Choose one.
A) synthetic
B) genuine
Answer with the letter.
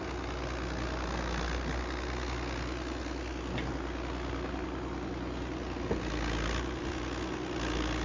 B